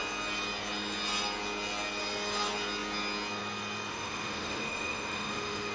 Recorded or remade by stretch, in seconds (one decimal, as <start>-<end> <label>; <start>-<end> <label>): 0.0-3.9 recorded; 3.9-5.7 remade